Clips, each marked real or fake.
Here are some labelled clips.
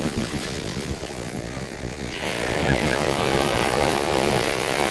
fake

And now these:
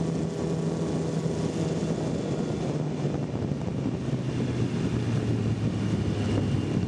real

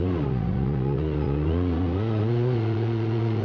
fake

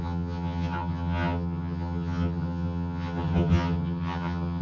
fake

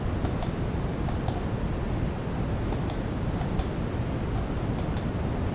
real